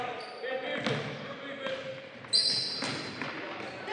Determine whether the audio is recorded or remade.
recorded